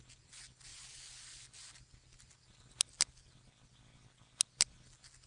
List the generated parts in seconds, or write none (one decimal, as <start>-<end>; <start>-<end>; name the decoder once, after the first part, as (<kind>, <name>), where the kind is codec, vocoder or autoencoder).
none